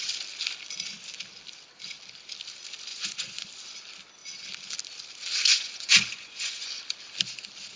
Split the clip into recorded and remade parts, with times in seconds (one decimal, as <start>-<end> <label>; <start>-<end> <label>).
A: 0.0-2.9 recorded; 2.9-3.5 remade; 3.5-5.5 recorded; 5.5-6.7 remade; 6.7-7.8 recorded